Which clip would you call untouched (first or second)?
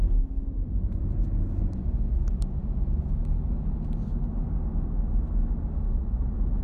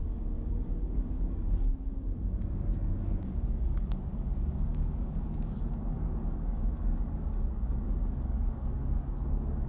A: first